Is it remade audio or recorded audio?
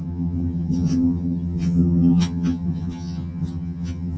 remade